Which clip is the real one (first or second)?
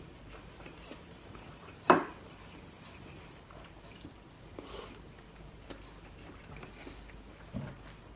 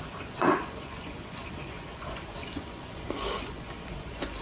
first